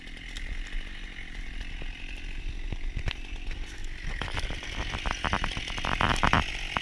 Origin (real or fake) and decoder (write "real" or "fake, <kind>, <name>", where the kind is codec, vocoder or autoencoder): real